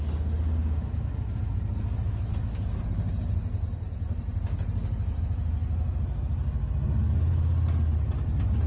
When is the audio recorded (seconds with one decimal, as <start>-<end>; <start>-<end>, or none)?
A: 0.0-2.3; 2.8-8.7